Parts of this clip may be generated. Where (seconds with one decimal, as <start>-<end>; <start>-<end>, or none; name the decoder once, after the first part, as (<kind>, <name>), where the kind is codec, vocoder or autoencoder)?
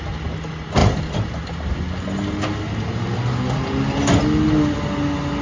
none